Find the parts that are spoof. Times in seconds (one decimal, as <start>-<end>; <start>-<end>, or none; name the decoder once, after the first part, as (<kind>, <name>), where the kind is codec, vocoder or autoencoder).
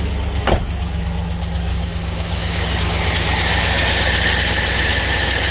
1.7-3.1 (codec, DAC)